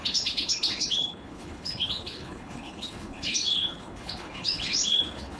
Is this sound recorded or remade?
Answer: remade